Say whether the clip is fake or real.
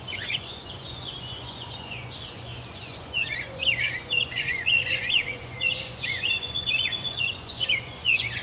fake